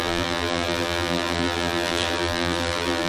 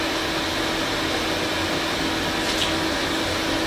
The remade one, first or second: first